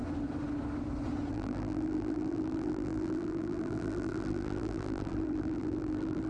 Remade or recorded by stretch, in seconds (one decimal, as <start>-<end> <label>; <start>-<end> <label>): 0.0-1.3 recorded; 1.3-6.3 remade